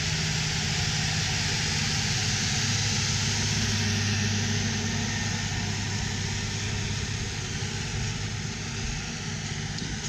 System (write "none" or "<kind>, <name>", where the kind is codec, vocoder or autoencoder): none